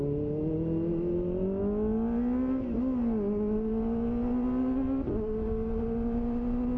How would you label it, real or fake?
real